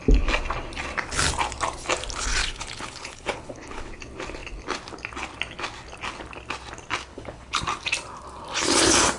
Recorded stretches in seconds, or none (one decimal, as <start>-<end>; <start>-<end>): 0.0-2.4; 3.9-7.1; 7.6-9.2